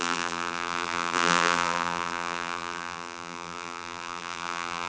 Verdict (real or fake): fake